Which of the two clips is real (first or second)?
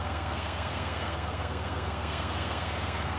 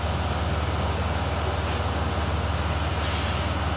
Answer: second